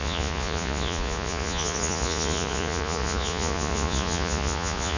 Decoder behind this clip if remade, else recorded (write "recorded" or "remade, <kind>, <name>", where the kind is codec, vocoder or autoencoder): remade, vocoder, Vocos